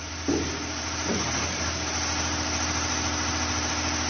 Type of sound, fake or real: real